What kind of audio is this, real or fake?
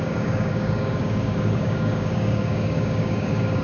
fake